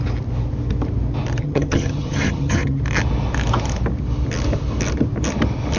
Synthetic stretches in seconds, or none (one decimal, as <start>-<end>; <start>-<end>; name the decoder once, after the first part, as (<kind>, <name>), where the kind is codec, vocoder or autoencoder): 1.4-2.8 (vocoder, HiFi-GAN)